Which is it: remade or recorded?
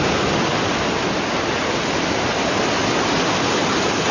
recorded